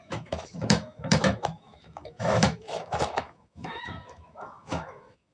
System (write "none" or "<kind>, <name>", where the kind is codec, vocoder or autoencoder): autoencoder, DAC-VAE